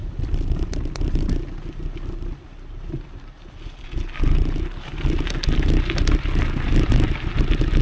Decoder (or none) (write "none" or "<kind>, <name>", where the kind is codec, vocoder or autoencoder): none